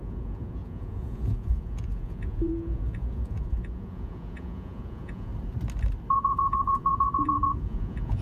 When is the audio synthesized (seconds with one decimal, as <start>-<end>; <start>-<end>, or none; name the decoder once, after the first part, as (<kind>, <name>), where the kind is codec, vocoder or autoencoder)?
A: 0.0-5.3 (vocoder, Vocos); 6.1-8.2